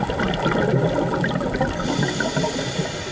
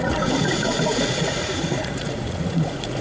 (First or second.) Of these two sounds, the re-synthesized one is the second